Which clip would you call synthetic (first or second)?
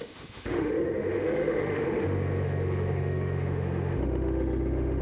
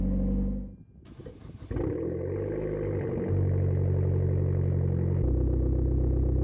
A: first